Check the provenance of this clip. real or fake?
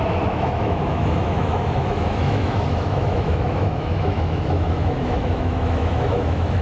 fake